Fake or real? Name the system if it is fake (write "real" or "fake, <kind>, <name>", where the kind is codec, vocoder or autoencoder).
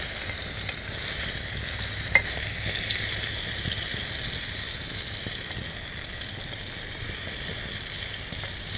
real